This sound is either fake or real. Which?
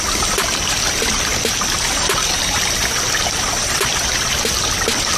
real